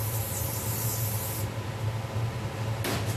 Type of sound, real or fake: real